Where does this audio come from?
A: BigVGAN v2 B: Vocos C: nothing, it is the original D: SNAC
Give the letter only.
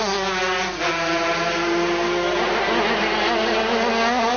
C